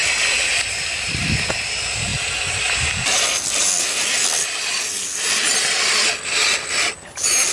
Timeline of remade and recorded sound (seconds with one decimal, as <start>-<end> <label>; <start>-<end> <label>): 0.0-0.5 recorded; 0.5-2.1 remade; 2.1-6.6 recorded; 6.6-7.5 remade